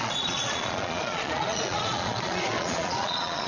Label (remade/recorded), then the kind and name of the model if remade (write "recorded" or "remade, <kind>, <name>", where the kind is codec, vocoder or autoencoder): remade, vocoder, Vocos